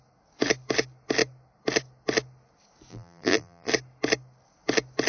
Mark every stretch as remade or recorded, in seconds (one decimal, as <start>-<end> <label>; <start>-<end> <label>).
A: 0.0-2.9 recorded; 2.9-3.7 remade; 3.7-5.1 recorded